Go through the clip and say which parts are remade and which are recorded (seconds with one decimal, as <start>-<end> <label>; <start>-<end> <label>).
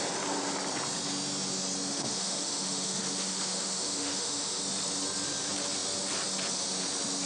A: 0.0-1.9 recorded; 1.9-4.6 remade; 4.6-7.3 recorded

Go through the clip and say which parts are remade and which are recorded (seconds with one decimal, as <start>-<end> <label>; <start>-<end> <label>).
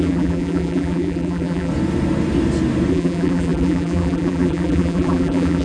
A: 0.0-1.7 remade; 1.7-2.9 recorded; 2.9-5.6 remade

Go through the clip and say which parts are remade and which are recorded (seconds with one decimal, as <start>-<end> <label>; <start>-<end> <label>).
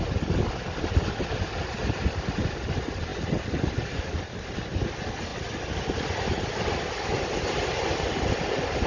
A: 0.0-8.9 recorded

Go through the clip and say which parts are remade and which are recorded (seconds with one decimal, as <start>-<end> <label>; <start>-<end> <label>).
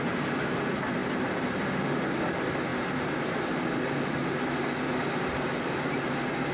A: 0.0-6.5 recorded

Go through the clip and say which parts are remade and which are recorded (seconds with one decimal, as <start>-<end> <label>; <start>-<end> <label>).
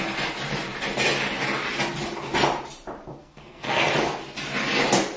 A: 0.0-3.2 recorded; 3.2-3.9 remade; 3.9-5.2 recorded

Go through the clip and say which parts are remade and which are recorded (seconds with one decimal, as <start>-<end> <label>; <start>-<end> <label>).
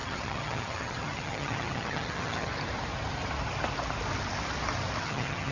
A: 0.0-2.5 remade; 2.5-5.0 recorded; 5.0-5.5 remade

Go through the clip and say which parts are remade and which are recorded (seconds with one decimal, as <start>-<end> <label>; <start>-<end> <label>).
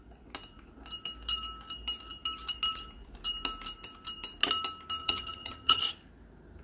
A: 0.0-5.0 recorded; 5.0-5.8 remade; 5.8-6.6 recorded